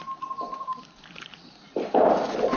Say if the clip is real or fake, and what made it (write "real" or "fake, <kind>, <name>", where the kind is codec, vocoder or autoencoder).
real